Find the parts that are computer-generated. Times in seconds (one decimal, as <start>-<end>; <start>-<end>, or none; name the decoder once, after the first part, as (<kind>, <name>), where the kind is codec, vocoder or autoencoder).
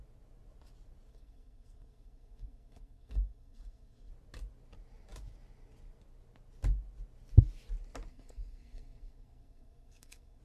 1.1-4.1 (codec, SNAC); 8.1-10.4